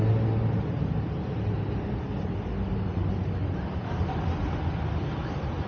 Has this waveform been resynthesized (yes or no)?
no